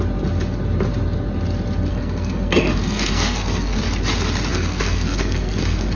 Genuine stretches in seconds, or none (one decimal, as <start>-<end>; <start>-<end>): 0.0-1.9; 3.8-4.5